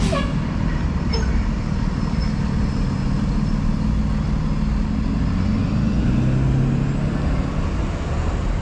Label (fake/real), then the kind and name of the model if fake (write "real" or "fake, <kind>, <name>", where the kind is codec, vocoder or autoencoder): real